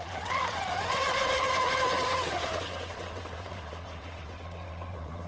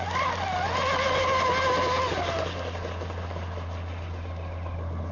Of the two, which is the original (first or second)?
second